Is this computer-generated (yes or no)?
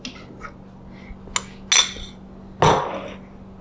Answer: no